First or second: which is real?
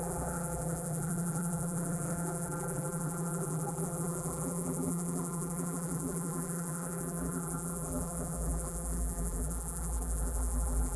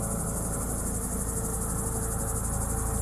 second